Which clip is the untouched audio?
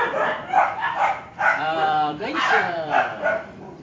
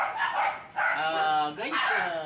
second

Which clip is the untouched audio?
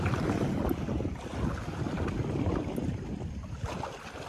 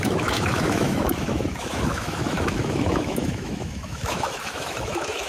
first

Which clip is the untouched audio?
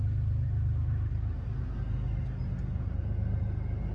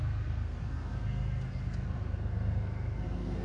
first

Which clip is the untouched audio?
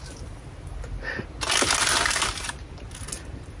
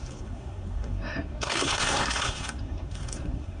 first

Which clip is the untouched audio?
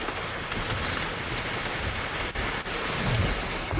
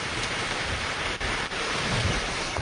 first